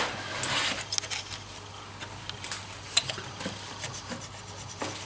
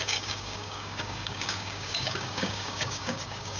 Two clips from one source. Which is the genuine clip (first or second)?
first